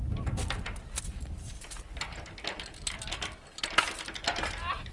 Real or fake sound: real